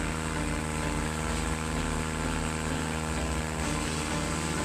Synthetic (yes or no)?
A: no